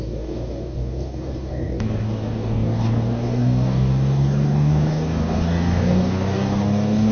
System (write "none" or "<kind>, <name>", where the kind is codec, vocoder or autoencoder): codec, DAC